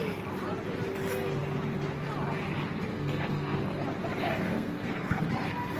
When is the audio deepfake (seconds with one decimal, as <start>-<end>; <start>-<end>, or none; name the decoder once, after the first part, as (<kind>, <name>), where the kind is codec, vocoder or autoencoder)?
2.9-3.6 (codec, SNAC); 4.3-5.2